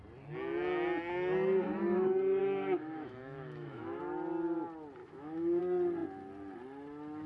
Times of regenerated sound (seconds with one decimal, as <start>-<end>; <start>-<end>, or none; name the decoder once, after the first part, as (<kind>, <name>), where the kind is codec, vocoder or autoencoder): 2.4-4.0 (autoencoder, DAC-VAE); 5.0-5.6